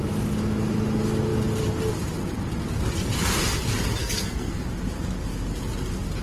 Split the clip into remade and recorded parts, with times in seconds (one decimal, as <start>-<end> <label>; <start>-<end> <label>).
0.0-4.0 recorded; 4.0-4.6 remade; 4.6-6.2 recorded